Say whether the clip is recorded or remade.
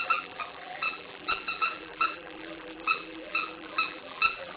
remade